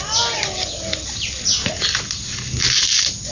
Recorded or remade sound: recorded